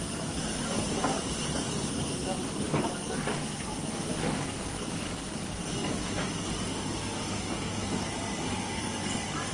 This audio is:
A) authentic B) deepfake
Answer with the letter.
B